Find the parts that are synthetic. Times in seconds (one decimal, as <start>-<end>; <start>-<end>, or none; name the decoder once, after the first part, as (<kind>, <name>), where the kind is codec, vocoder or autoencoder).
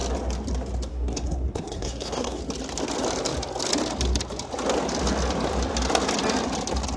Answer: 0.9-2.4 (codec, SNAC)